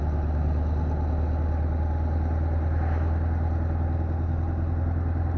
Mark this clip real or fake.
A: real